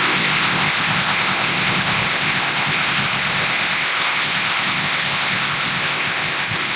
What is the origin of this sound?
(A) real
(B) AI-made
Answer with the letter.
B